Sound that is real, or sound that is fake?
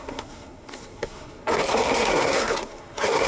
fake